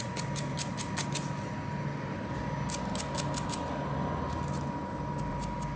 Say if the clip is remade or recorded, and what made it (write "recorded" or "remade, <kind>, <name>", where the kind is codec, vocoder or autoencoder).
recorded